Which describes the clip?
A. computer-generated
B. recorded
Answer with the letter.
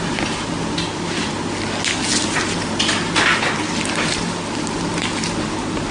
B